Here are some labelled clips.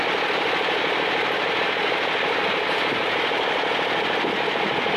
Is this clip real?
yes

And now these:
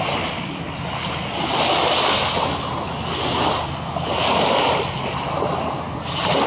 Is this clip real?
yes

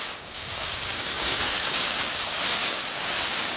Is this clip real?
no